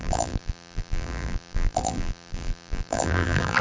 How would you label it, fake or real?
fake